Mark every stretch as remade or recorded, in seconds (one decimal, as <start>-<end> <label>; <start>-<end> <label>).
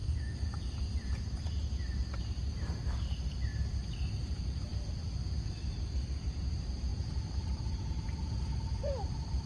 0.0-1.2 recorded; 1.2-9.5 remade